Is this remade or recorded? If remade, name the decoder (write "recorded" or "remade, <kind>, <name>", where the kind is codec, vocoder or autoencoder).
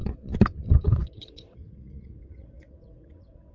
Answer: remade, vocoder, WaveNeXt